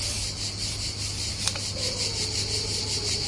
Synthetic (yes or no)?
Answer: no